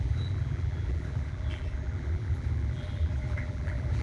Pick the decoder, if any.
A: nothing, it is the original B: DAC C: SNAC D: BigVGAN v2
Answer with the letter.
D